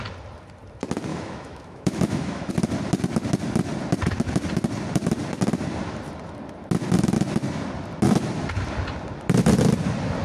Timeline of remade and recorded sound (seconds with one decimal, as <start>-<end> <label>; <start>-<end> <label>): 0.0-1.1 recorded; 1.1-2.5 remade; 2.5-10.2 recorded

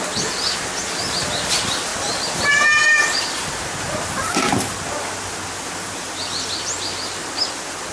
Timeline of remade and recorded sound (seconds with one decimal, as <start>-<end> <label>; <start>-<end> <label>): 0.0-7.9 recorded

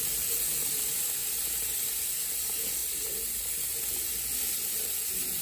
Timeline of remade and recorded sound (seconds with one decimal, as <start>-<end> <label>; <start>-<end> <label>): 0.0-2.8 recorded; 2.8-3.7 remade; 3.7-5.4 recorded

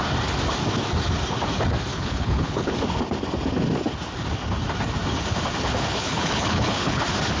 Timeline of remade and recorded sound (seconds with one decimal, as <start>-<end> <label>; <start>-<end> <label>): 0.0-1.9 recorded; 1.9-2.7 remade; 2.7-5.9 recorded; 5.9-7.0 remade; 7.0-7.4 recorded